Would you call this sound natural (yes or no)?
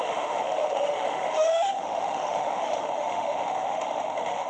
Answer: no